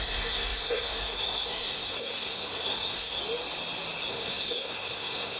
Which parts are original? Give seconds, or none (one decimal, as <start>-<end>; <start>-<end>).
3.2-4.1